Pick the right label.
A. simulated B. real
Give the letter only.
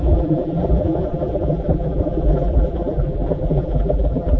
A